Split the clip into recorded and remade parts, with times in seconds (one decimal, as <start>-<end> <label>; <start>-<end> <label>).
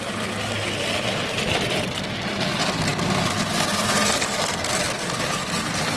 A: 0.0-6.0 recorded